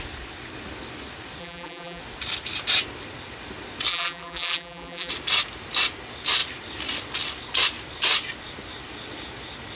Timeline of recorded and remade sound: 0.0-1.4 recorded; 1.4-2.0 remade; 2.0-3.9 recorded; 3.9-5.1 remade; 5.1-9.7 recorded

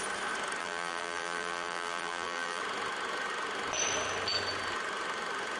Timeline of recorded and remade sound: 0.0-0.6 recorded; 0.6-2.6 remade; 2.6-5.6 recorded

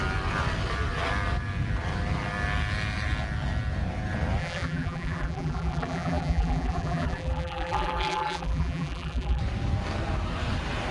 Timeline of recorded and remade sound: 0.0-4.4 recorded; 4.4-9.4 remade; 9.4-10.9 recorded

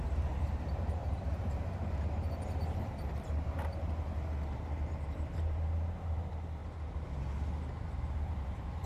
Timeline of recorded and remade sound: 0.0-6.6 remade; 6.6-8.2 recorded; 8.2-8.9 remade

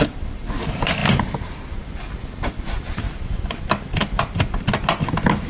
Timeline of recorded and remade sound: 0.0-5.5 recorded

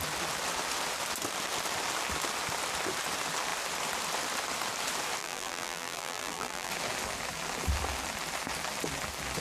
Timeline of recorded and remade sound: 0.0-5.2 recorded; 5.2-6.7 remade; 6.7-9.4 recorded

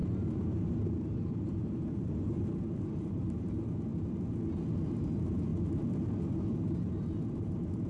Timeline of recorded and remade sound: 0.0-3.9 remade; 3.9-4.7 recorded; 4.7-5.5 remade; 5.5-6.3 recorded; 6.3-7.9 remade